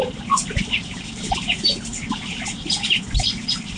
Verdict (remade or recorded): remade